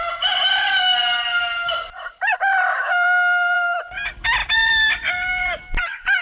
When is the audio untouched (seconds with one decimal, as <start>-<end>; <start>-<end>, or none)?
0.0-1.0; 3.8-4.4